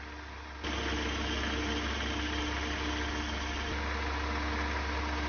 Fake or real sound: real